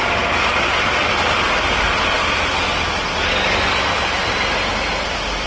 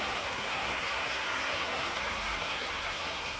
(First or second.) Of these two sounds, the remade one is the second